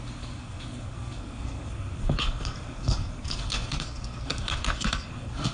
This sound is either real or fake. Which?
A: fake